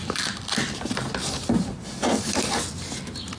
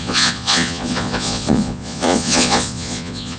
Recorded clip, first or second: first